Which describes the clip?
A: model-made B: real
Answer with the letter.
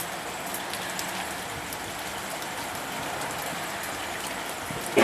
B